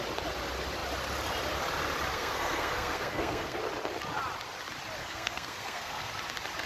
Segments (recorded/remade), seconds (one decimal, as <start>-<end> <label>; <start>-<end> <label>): 0.0-2.1 recorded; 2.1-3.6 remade; 3.6-5.0 recorded; 5.0-6.1 remade; 6.1-6.7 recorded